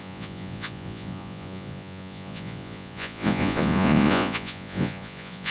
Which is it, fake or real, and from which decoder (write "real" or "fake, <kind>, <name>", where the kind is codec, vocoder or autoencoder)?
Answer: fake, vocoder, Vocos